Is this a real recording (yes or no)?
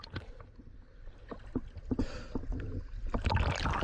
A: yes